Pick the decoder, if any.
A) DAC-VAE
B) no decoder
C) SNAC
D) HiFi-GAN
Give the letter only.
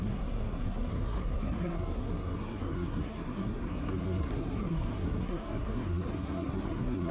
C